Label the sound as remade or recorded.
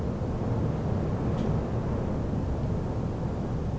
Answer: recorded